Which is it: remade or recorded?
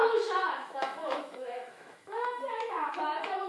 remade